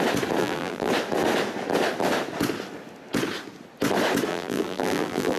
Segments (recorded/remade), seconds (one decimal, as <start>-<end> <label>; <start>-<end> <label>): 0.0-0.4 recorded; 0.4-0.9 remade; 0.9-4.3 recorded; 4.3-5.4 remade